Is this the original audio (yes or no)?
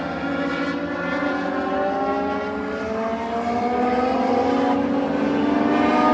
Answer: yes